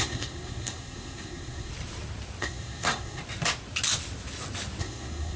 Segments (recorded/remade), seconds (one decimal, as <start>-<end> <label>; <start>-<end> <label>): 0.0-1.7 remade; 1.7-2.4 recorded; 2.4-3.2 remade; 3.2-4.8 recorded; 4.8-5.4 remade